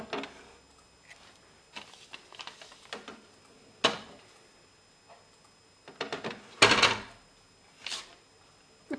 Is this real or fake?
real